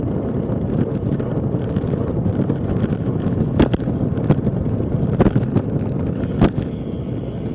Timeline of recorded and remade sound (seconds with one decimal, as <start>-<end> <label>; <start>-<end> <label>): 0.0-7.5 recorded